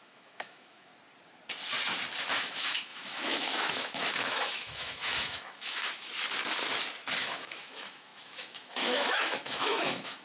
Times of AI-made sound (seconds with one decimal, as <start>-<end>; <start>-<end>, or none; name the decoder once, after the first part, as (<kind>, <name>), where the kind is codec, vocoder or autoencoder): 0.0-0.9 (autoencoder, DAC-VAE); 2.2-6.1; 7.2-10.2